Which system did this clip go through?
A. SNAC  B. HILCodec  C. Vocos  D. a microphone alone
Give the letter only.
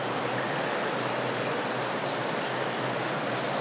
D